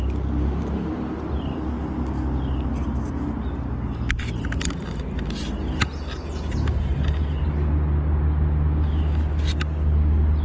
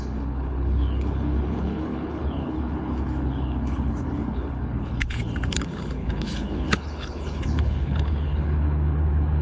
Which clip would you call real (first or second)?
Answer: first